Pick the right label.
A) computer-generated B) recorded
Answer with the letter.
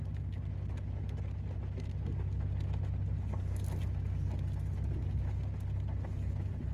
B